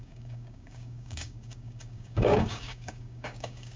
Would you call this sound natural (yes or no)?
no